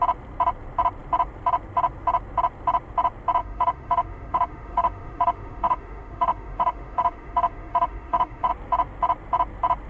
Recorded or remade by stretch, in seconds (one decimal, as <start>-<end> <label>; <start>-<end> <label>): 0.0-3.4 recorded; 3.4-8.5 remade; 8.5-9.9 recorded